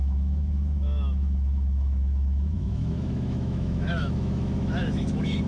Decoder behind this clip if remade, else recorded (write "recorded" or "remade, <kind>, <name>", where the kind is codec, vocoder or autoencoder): remade, autoencoder, DAC-VAE